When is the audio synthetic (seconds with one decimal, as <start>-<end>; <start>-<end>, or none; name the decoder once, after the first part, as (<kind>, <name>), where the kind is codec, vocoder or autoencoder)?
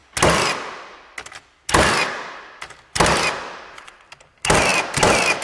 none